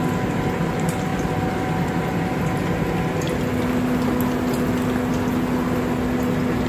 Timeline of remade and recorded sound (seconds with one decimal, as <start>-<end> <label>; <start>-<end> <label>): 0.0-6.7 recorded